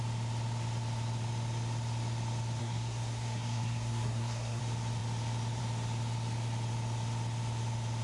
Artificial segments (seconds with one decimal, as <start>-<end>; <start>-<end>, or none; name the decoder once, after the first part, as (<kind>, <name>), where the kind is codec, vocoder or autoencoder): 2.6-4.6 (codec, SNAC)